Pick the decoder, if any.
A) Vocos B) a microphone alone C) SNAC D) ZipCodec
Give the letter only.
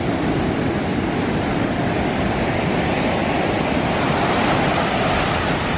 B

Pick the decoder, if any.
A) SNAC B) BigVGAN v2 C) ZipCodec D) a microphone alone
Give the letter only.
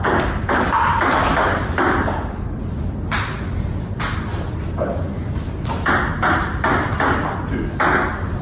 D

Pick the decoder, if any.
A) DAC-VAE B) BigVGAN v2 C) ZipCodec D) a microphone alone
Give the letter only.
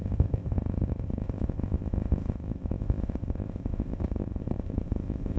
C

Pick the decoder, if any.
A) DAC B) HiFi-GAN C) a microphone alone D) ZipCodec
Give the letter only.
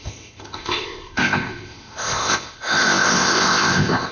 D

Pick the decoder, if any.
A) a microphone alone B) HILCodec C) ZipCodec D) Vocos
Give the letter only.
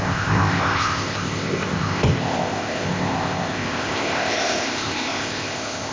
C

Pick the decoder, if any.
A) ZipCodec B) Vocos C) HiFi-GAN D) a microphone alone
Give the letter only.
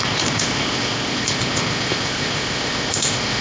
A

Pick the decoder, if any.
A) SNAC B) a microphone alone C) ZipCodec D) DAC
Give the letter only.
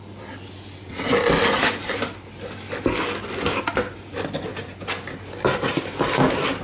B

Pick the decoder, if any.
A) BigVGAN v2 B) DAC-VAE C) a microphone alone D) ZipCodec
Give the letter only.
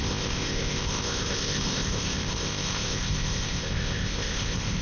D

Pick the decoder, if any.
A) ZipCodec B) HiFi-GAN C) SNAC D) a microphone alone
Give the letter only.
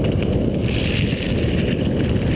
D